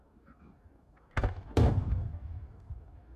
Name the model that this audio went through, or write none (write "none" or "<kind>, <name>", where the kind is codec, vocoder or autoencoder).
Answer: codec, DAC